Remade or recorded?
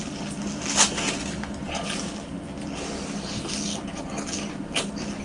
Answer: recorded